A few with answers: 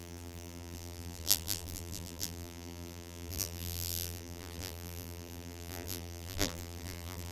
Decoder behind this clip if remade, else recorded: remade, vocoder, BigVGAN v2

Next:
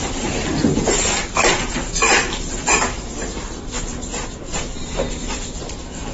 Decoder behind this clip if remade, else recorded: remade, vocoder, BigVGAN v2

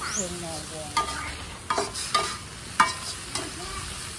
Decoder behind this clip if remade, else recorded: recorded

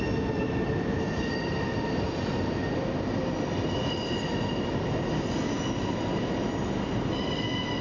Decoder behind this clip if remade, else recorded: recorded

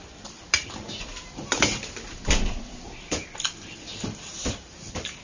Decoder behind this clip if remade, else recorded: remade, vocoder, BigVGAN v2